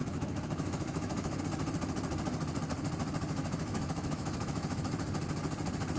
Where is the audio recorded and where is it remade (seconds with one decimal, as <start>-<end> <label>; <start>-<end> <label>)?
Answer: 0.0-1.4 remade; 1.4-3.4 recorded; 3.4-4.8 remade; 4.8-6.0 recorded